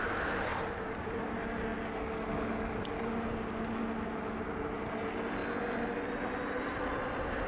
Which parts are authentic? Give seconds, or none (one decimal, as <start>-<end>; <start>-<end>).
0.0-0.5; 1.2-7.5